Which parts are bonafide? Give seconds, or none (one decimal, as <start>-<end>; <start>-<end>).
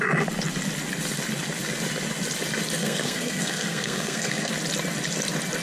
0.0-2.8; 4.5-5.6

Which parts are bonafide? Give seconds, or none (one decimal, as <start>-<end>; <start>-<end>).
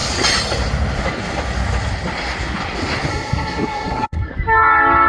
0.0-3.1; 4.3-5.1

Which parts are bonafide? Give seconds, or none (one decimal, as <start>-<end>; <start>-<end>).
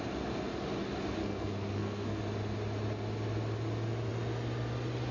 0.0-1.2; 2.2-5.1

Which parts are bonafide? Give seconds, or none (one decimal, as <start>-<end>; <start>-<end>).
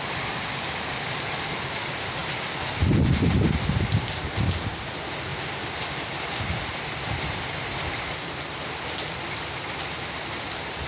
0.0-10.9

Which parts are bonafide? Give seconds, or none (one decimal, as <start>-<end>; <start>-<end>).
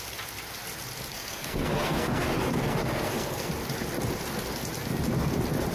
0.0-1.1; 3.5-5.7